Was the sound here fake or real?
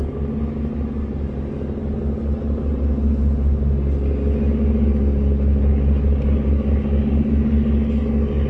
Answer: real